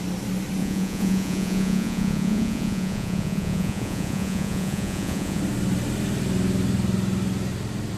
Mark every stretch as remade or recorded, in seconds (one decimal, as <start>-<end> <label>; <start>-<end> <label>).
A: 0.0-0.6 recorded; 0.6-5.4 remade; 5.4-8.0 recorded

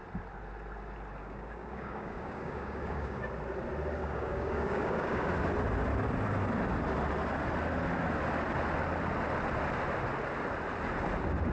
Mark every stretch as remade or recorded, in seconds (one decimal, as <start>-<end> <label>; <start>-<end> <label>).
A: 0.0-1.2 recorded; 1.2-3.2 remade; 3.2-4.0 recorded; 4.0-5.3 remade; 5.3-11.5 recorded